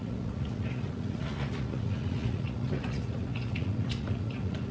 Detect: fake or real fake